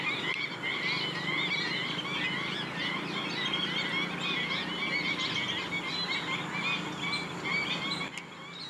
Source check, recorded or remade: recorded